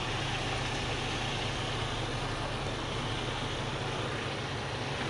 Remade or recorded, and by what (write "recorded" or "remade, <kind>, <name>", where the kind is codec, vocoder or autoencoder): recorded